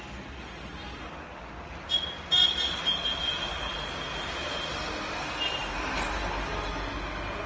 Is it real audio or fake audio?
real